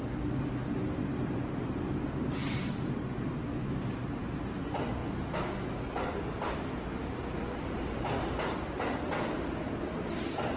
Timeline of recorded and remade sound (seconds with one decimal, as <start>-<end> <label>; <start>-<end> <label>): 0.0-10.6 recorded

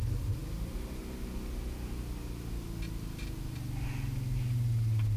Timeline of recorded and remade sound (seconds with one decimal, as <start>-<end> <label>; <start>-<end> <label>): 0.0-5.2 recorded

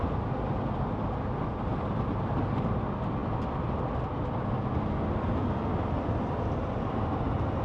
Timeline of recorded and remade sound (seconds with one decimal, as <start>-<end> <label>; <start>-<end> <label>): 0.0-7.6 recorded

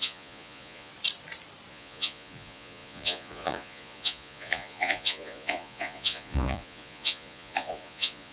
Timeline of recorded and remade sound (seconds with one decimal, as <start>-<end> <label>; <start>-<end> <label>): 0.0-0.9 remade; 0.9-1.7 recorded; 1.7-8.3 remade

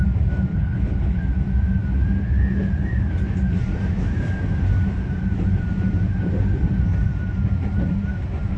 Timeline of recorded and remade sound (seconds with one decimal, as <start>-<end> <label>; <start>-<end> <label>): 0.0-0.5 recorded; 0.5-1.2 remade; 1.2-8.6 recorded